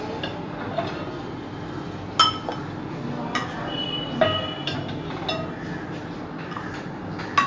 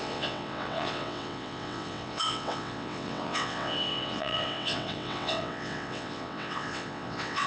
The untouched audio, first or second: first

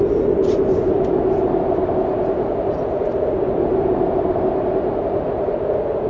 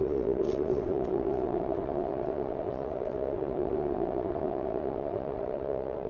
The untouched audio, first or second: first